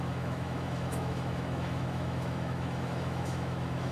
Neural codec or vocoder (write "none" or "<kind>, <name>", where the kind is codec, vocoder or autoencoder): autoencoder, DAC-VAE